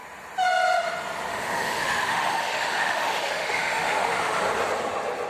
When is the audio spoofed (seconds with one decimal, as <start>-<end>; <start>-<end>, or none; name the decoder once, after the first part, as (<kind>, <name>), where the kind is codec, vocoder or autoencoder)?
1.3-4.4 (autoencoder, DAC-VAE)